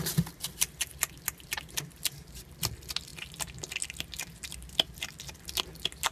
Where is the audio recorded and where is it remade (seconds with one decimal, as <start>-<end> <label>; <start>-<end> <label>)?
0.0-6.1 recorded